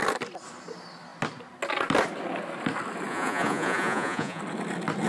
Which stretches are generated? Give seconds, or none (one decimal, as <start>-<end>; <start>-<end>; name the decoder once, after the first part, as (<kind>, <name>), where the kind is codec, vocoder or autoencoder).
3.1-4.4 (vocoder, Vocos)